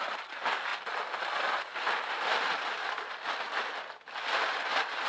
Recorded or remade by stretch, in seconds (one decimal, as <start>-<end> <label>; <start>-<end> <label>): 0.0-5.1 recorded